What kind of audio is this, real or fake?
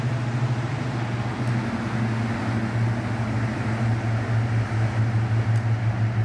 real